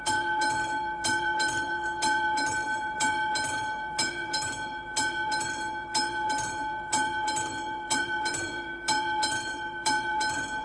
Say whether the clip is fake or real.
fake